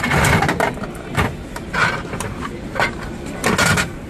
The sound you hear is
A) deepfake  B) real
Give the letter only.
B